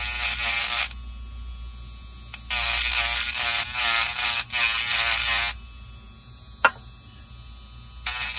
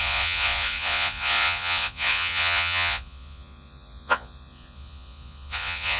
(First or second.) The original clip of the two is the first